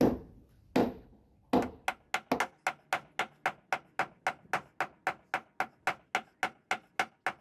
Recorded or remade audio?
recorded